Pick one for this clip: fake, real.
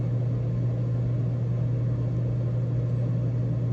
real